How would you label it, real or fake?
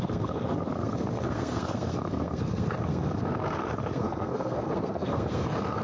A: fake